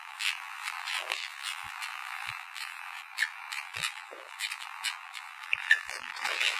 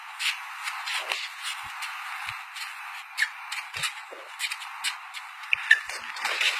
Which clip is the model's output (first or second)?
first